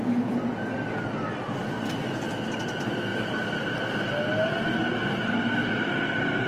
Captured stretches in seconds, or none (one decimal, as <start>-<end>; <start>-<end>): 0.0-6.5